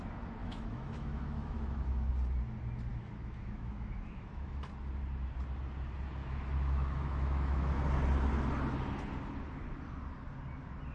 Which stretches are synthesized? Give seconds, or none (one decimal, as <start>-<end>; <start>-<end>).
0.4-2.1; 2.9-4.7; 6.2-7.8